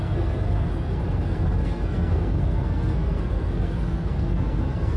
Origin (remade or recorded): remade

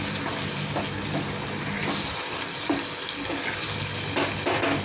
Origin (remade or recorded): recorded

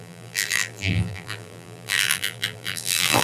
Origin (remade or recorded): remade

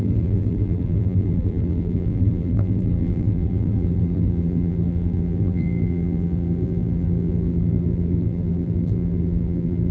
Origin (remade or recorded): remade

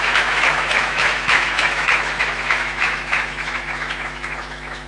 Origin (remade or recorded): remade